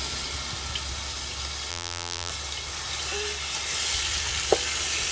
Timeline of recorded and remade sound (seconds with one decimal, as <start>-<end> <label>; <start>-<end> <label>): 0.0-1.7 recorded; 1.7-2.3 remade; 2.3-5.1 recorded